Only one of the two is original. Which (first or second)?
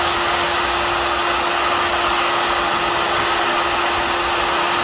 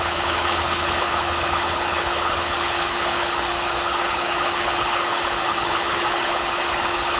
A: first